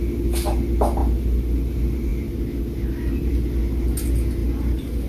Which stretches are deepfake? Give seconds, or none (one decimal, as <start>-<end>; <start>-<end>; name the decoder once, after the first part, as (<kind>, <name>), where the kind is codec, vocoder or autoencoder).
none